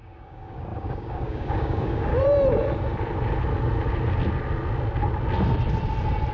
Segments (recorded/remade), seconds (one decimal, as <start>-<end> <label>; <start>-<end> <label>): 0.0-2.1 remade; 2.1-6.3 recorded